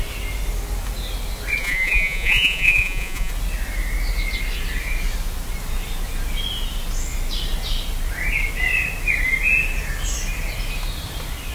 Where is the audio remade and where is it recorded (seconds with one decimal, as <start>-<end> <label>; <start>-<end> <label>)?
0.0-1.6 recorded; 1.6-3.3 remade; 3.3-11.5 recorded